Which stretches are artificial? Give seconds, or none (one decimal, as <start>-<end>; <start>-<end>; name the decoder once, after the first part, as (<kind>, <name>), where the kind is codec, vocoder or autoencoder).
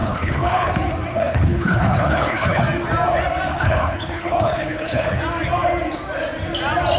0.0-0.7 (codec, HILCodec); 1.1-2.6; 3.5-5.2